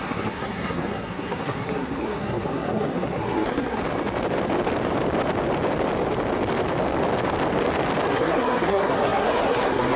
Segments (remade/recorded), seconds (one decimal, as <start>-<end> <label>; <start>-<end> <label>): 0.0-3.8 remade; 3.8-8.1 recorded; 8.1-10.0 remade

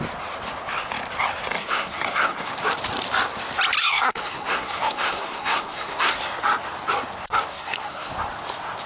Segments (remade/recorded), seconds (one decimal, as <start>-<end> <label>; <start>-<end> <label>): 0.0-1.6 recorded; 1.6-2.5 remade; 2.5-3.8 recorded; 3.8-6.1 remade; 6.1-7.5 recorded; 7.5-8.1 remade; 8.1-8.9 recorded

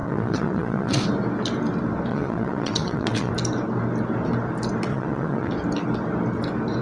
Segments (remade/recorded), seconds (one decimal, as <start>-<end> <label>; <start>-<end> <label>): 0.0-1.0 remade; 1.0-2.1 recorded; 2.1-3.3 remade; 3.3-4.9 recorded; 4.9-5.5 remade; 5.5-6.8 recorded

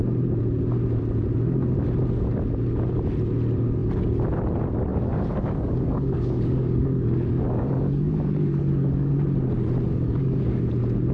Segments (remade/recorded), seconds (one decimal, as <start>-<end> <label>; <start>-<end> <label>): 0.0-4.9 recorded; 4.9-9.1 remade; 9.1-9.9 recorded; 9.9-10.7 remade; 10.7-11.1 recorded

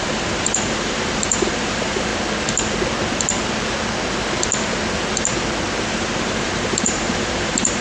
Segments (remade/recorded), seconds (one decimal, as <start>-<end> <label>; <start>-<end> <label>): 0.0-2.1 remade; 2.1-5.9 recorded; 5.9-7.8 remade

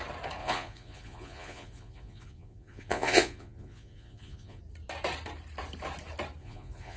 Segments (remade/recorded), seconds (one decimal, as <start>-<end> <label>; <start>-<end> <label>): 0.0-0.4 recorded; 0.4-4.6 remade; 4.6-6.4 recorded; 6.4-7.0 remade

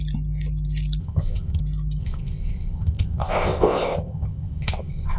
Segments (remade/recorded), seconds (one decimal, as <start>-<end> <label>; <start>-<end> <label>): 0.0-1.0 recorded; 1.0-1.6 remade; 1.6-2.0 recorded; 2.0-5.2 remade